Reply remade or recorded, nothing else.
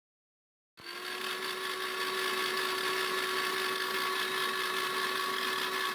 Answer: recorded